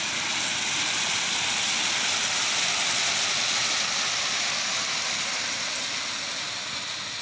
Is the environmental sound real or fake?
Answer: real